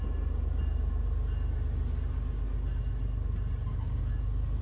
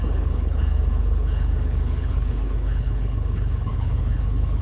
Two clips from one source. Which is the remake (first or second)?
second